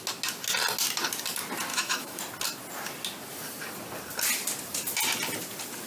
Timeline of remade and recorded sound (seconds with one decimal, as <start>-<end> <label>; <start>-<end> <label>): 0.0-1.7 recorded; 1.7-2.2 remade; 2.2-5.9 recorded